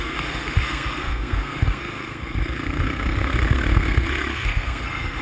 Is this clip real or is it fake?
fake